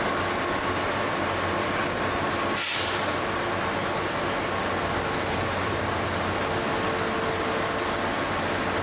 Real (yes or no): yes